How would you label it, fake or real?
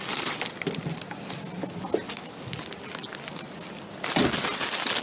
real